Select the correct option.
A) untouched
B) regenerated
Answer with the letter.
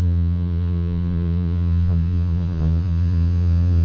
B